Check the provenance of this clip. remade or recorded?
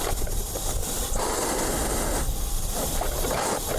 recorded